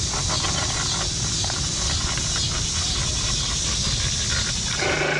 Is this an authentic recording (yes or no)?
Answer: yes